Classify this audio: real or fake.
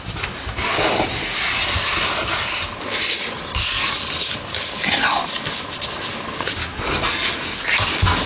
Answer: real